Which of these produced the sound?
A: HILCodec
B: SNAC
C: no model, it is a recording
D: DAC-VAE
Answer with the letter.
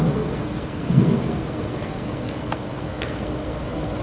B